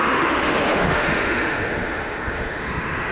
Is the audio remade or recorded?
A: remade